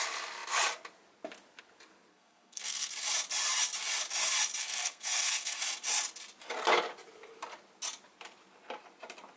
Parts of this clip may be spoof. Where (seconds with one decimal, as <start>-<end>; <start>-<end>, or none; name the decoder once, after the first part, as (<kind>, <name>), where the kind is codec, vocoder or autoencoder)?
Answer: 2.1-2.9 (codec, SNAC); 4.6-5.6

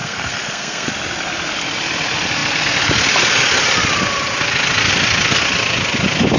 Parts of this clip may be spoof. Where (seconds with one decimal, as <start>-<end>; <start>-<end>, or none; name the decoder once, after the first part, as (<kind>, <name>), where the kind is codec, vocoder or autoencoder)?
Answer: 0.0-0.9 (codec, SNAC)

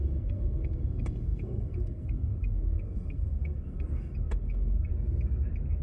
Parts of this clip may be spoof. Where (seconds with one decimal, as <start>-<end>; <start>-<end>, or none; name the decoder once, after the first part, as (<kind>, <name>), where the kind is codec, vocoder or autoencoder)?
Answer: 0.0-4.9 (codec, SNAC)

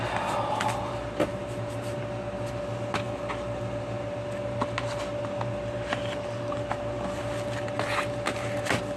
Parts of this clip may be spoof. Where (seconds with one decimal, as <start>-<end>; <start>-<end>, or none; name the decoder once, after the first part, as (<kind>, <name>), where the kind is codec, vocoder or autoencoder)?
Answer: none

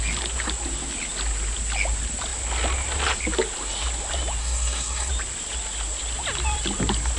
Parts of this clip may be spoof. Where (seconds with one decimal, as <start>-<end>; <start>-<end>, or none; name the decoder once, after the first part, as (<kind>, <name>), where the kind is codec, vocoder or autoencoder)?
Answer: 4.4-5.1 (codec, SNAC)

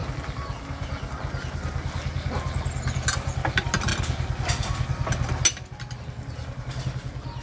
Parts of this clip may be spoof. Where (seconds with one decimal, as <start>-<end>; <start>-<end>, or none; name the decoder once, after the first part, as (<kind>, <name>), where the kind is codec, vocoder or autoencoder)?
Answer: none

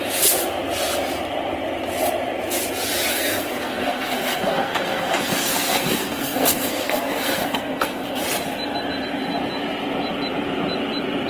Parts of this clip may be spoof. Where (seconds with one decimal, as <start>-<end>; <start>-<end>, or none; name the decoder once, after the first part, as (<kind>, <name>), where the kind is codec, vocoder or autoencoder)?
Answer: 3.1-8.2 (codec, SNAC)

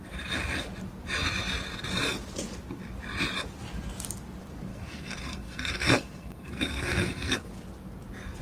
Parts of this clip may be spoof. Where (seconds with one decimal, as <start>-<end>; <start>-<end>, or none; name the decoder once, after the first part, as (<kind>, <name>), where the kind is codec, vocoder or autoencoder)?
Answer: 4.7-7.5 (codec, SNAC)